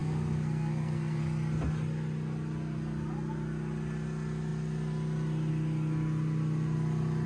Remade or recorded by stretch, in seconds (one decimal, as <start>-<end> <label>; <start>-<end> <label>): 0.0-1.2 remade; 1.2-7.3 recorded